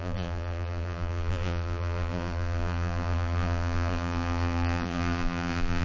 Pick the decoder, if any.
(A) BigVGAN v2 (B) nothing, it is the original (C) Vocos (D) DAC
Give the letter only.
A